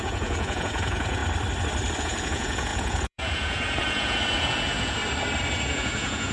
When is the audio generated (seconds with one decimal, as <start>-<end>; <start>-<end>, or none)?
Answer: 0.0-1.2; 2.0-5.0; 5.5-6.3